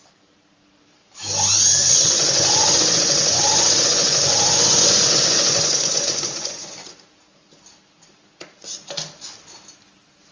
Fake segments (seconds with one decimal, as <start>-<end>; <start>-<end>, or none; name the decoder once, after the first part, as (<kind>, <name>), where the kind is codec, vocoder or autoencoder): 1.8-6.7 (vocoder, Vocos)